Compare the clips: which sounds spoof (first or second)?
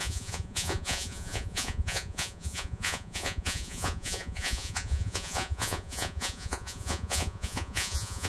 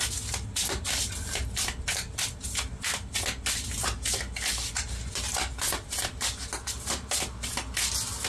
first